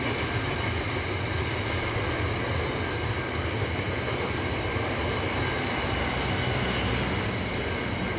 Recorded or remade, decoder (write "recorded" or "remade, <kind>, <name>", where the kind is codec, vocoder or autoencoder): recorded